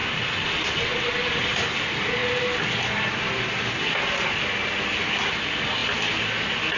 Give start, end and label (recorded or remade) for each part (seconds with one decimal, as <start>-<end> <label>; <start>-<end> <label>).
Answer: 0.0-6.8 recorded